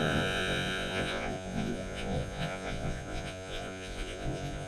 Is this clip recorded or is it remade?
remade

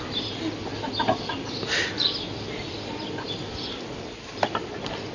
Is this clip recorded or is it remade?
recorded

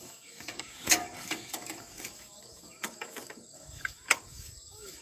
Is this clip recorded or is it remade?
remade